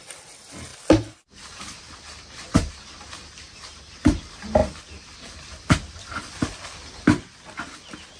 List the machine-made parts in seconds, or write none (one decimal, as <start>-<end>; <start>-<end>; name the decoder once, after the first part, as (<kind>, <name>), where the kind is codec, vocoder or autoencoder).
none